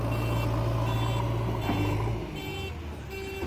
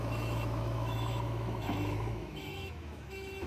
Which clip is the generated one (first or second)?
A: second